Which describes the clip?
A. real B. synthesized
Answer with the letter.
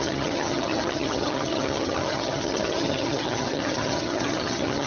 B